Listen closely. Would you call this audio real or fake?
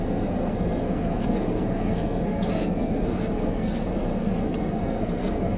fake